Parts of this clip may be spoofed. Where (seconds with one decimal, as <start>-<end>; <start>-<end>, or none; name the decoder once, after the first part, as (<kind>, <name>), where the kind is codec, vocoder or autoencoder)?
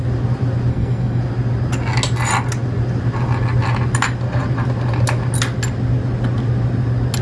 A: 0.7-1.2 (codec, SNAC)